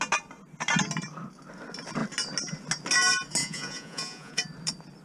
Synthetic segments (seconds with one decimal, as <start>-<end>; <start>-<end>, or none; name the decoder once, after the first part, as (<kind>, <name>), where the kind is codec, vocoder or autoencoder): 3.4-4.4 (vocoder, Vocos)